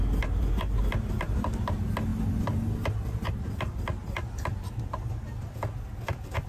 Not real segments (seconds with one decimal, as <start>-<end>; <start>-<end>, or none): none